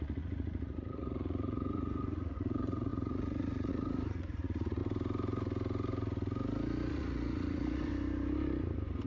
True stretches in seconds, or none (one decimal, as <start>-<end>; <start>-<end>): 4.8-6.9; 7.9-9.1

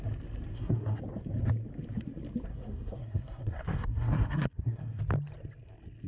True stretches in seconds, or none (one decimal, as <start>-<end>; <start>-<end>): 0.0-0.5; 1.0-2.5; 5.0-6.1

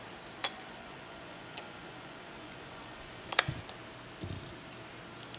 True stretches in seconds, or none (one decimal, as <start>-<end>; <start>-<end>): 0.0-0.4; 3.6-5.4

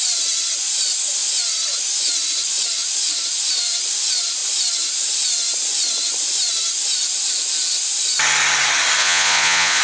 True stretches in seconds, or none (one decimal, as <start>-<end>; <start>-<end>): 0.0-9.0

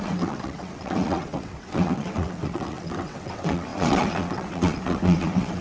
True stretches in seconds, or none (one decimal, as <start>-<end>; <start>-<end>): none